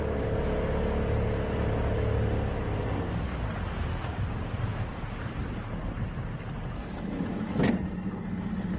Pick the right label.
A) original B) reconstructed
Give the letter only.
A